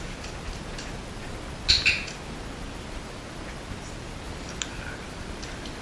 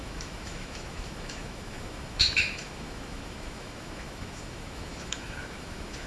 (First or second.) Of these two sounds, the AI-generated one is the second